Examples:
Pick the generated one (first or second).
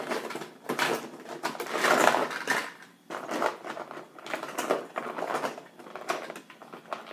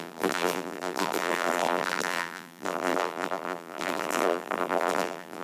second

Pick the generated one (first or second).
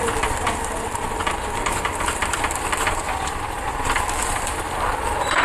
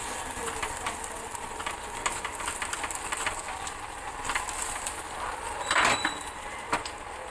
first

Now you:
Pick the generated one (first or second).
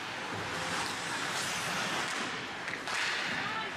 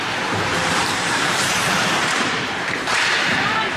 second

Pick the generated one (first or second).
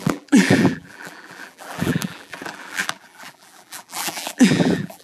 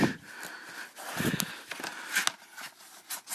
first